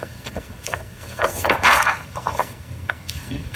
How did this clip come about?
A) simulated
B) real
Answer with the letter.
A